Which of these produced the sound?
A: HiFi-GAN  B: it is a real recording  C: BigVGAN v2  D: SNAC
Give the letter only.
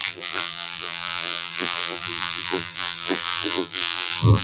C